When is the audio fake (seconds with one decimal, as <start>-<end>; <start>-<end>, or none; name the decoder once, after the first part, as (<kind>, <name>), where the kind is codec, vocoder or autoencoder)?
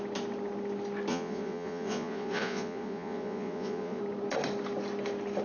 1.1-4.0 (vocoder, Vocos)